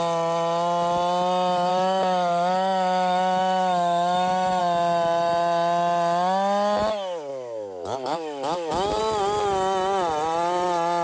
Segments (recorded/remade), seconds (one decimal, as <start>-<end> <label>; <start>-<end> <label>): 0.0-1.7 recorded; 1.7-4.6 remade; 4.6-7.3 recorded; 7.3-9.0 remade; 9.0-11.0 recorded